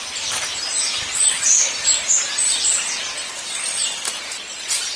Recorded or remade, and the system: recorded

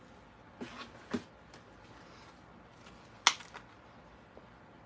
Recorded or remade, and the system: recorded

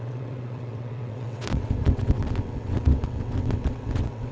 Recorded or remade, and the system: remade, vocoder, WaveNeXt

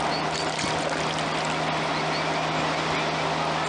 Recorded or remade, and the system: recorded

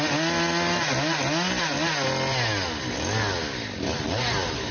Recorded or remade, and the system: recorded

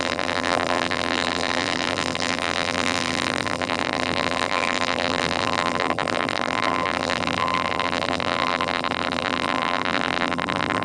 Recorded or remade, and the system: remade, vocoder, BigVGAN v2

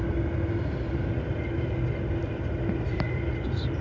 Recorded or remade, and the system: recorded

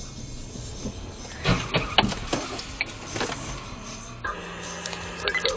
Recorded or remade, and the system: recorded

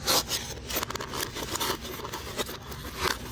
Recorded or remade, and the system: recorded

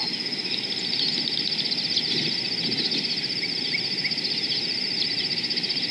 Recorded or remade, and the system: recorded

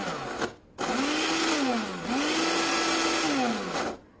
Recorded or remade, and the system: recorded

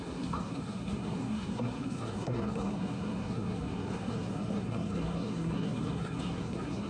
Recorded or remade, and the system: remade, codec, SNAC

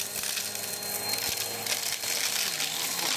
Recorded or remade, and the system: recorded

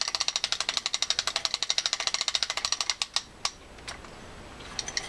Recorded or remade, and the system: recorded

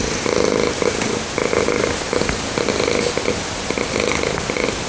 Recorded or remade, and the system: recorded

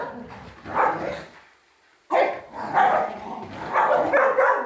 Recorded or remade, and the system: recorded